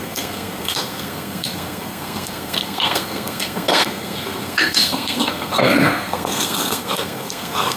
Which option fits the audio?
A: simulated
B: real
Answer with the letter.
A